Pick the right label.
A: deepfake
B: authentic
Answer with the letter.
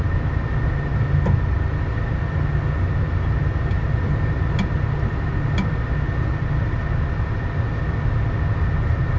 B